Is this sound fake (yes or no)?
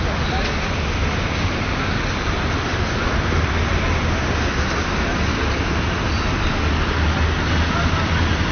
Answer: no